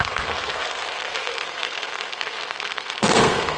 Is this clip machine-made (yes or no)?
yes